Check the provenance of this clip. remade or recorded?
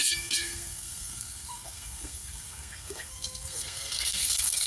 remade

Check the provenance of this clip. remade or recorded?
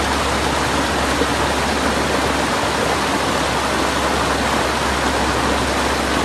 recorded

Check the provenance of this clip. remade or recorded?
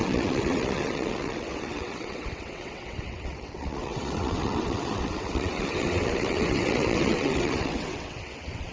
remade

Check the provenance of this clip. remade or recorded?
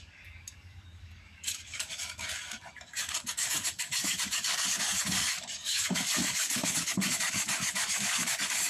remade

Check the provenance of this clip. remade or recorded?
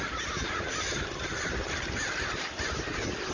recorded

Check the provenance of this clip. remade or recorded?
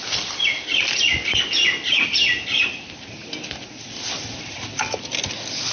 recorded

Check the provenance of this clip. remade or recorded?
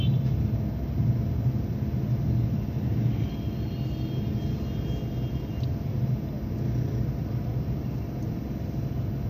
recorded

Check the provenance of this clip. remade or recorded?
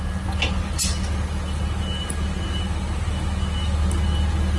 recorded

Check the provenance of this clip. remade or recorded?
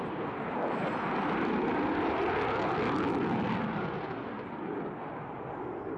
recorded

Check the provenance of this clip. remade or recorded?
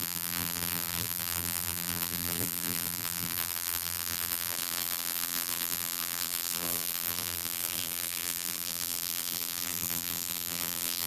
remade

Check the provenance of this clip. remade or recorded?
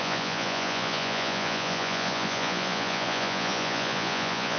remade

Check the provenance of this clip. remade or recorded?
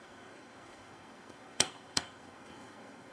remade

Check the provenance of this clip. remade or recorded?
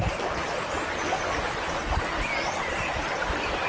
recorded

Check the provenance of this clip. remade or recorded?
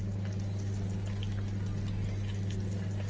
recorded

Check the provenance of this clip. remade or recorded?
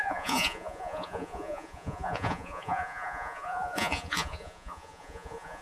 remade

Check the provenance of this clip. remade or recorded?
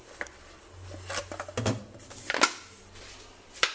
recorded